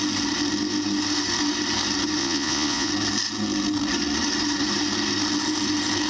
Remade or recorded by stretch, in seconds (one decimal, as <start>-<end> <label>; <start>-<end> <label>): 0.0-2.2 recorded; 2.2-2.9 remade; 2.9-6.1 recorded